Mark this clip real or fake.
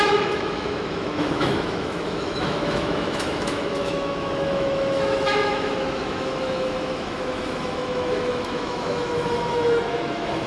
fake